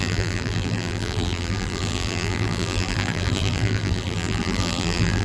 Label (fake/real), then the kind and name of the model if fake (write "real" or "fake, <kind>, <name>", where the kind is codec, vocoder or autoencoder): fake, vocoder, BigVGAN v2